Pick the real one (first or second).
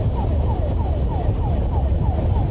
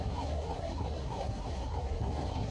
first